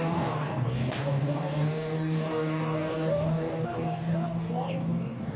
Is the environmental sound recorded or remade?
remade